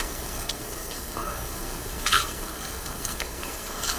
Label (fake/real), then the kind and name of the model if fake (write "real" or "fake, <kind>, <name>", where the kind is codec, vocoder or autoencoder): fake, codec, SNAC